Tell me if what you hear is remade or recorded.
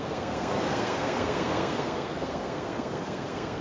remade